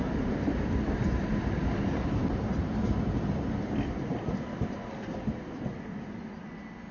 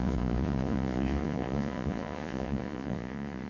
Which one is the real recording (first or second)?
first